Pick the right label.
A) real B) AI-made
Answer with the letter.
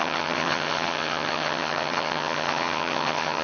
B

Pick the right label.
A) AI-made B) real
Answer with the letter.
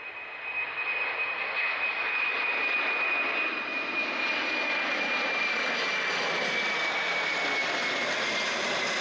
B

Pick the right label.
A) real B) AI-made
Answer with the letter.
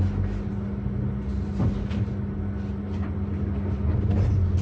A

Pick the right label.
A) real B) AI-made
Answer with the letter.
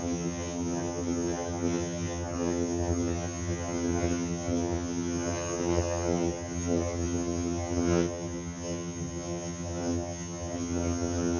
B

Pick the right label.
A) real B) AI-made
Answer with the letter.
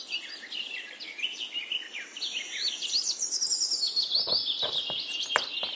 A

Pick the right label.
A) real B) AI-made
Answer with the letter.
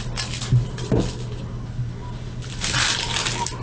A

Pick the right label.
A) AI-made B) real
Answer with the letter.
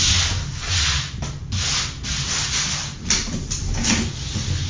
B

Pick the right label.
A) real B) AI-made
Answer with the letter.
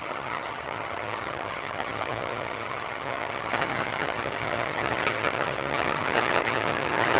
B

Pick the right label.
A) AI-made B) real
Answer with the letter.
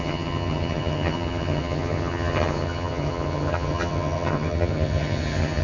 A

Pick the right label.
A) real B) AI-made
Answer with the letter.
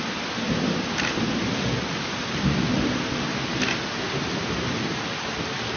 A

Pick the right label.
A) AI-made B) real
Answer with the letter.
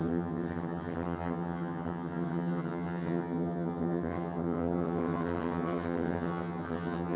A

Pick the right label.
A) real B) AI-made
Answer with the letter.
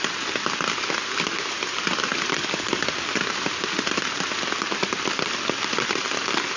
A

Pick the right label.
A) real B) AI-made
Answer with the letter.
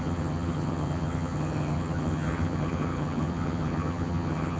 B